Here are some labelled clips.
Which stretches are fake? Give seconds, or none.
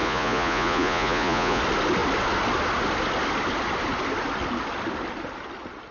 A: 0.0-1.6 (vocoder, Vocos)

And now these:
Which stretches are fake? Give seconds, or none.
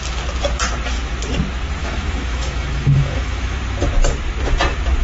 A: 1.8-3.6 (autoencoder, DAC-VAE)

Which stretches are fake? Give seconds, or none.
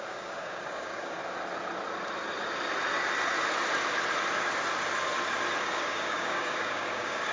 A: 0.0-1.2 (codec, DAC); 5.6-7.3